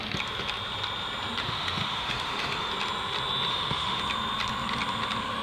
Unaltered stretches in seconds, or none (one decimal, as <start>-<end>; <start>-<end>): 0.0-1.4; 2.7-3.5; 4.0-5.4

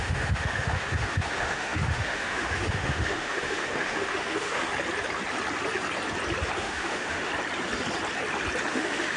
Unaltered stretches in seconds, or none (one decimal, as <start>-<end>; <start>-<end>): 4.7-6.6; 7.3-8.7

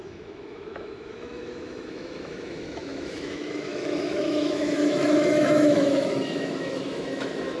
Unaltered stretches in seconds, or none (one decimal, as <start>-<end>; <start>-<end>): none

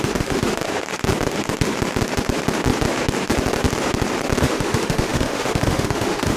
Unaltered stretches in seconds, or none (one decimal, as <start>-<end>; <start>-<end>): 0.6-4.4

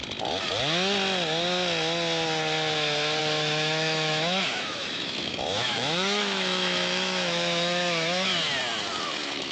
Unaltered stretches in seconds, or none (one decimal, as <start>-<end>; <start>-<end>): 0.0-3.2; 8.3-9.0

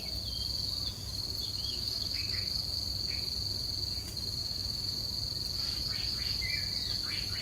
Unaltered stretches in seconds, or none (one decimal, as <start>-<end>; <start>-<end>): 0.0-1.5; 2.5-4.4; 5.0-7.4